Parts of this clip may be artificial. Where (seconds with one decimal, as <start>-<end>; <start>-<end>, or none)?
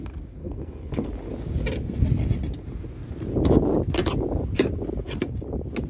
0.4-1.1